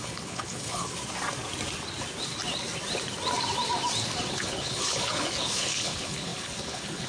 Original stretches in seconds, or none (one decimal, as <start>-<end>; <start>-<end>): 0.9-4.3